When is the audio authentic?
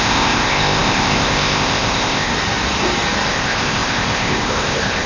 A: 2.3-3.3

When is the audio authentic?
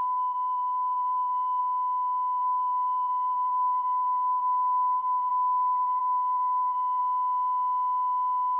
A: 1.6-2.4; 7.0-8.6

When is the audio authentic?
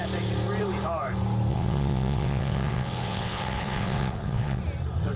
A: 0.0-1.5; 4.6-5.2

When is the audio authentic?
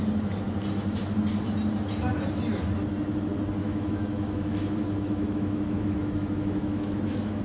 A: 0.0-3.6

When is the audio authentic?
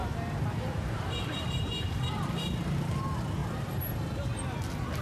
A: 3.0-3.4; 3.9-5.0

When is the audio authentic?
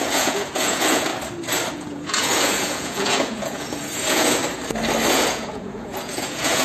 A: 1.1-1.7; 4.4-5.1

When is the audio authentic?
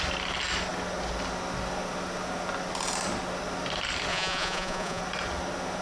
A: 0.0-4.1; 5.0-5.8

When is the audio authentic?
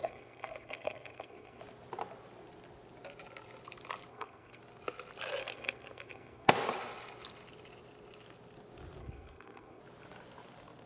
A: 1.6-4.1; 4.6-5.4; 6.5-9.0; 9.8-10.9